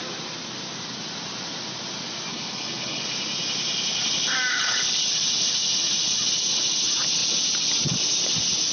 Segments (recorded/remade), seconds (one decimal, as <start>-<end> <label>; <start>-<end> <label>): 0.0-2.3 recorded; 2.3-3.0 remade; 3.0-4.5 recorded; 4.5-5.1 remade; 5.1-8.7 recorded